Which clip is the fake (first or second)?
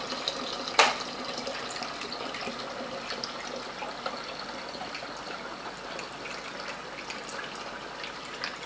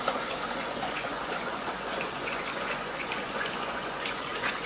second